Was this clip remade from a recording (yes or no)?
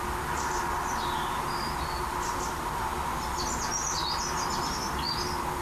no